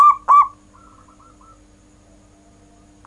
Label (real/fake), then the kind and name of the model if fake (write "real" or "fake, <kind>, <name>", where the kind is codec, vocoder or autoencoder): real